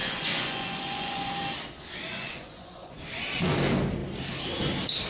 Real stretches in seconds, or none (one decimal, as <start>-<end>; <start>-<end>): 1.3-2.1; 3.0-5.1